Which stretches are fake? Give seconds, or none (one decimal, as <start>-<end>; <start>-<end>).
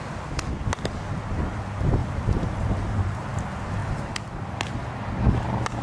2.0-3.3; 3.8-4.8